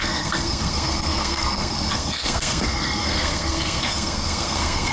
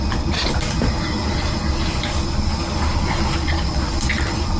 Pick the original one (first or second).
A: second